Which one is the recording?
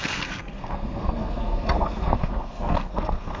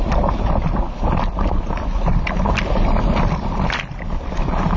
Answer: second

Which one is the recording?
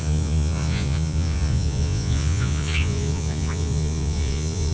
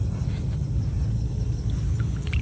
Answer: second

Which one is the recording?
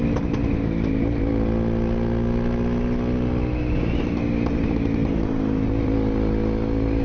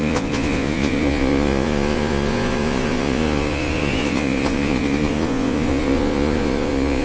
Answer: first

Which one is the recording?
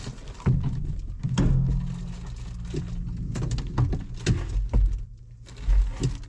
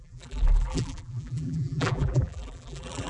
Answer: first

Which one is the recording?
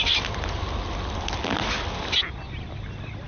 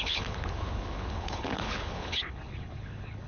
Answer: first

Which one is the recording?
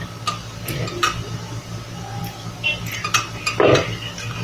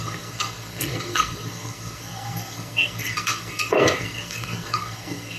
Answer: first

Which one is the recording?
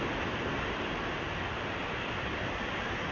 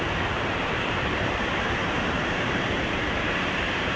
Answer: first